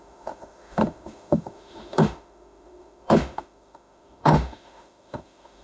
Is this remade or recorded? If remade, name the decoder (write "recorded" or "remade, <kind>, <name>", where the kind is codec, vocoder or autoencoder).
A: remade, autoencoder, DAC-VAE